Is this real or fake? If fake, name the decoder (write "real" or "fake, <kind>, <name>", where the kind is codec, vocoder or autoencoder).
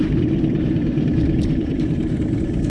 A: fake, vocoder, BigVGAN v2